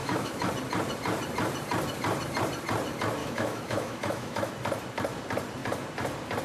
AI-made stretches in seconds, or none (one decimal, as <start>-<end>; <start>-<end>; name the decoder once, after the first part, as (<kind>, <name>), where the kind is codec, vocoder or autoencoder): 0.0-0.5 (autoencoder, DAC-VAE); 3.2-4.5